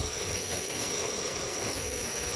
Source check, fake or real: fake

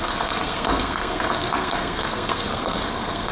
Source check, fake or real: fake